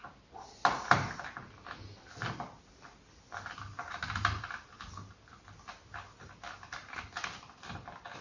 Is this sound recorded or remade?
recorded